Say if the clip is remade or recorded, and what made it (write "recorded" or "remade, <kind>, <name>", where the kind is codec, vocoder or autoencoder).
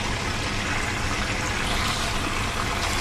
recorded